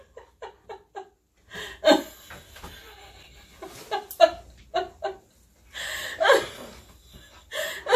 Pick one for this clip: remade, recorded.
recorded